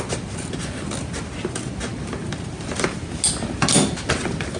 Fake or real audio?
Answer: real